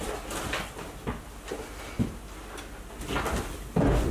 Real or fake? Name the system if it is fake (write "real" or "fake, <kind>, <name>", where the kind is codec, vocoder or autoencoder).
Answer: real